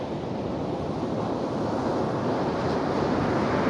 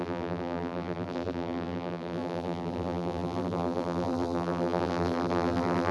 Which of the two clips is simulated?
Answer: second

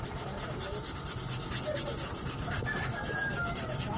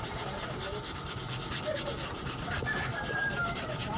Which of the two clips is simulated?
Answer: second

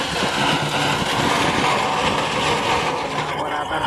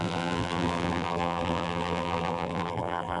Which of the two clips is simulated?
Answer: second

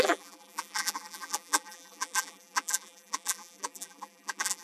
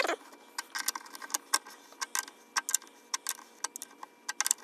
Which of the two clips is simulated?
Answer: first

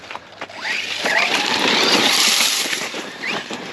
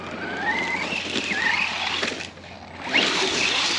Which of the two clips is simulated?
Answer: first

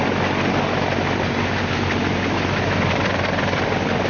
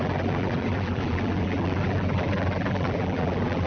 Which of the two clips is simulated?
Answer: second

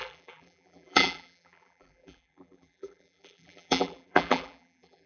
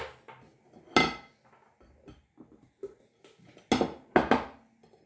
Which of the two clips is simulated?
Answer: first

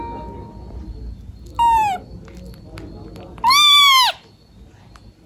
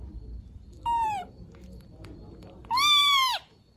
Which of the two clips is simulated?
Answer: second